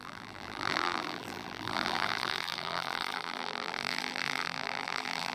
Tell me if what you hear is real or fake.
fake